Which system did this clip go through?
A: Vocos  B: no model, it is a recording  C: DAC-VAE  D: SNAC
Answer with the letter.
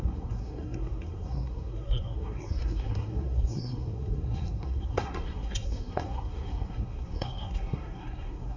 D